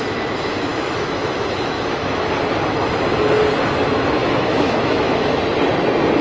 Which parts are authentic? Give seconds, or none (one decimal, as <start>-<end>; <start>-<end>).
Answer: 0.0-0.7; 2.3-4.2; 5.4-6.2